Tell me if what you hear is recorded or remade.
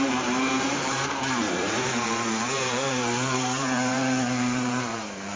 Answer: remade